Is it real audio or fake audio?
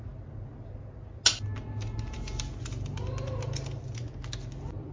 real